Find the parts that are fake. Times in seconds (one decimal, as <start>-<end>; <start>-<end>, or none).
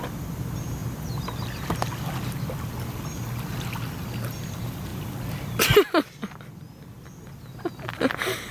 none